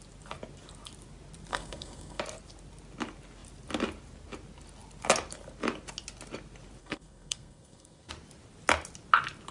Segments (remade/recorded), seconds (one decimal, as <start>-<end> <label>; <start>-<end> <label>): 0.0-1.5 recorded; 1.5-2.2 remade; 2.2-6.8 recorded; 6.8-8.1 remade; 8.1-9.5 recorded